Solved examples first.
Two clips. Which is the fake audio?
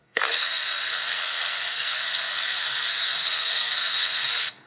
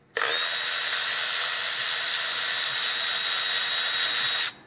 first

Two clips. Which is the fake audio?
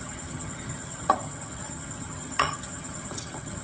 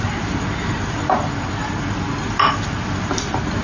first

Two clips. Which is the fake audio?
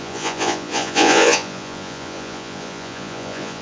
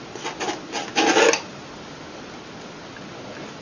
first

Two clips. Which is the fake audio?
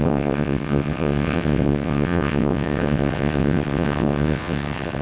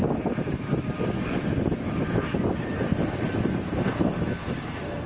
first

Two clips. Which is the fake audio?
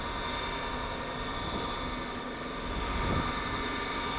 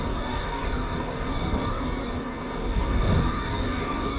second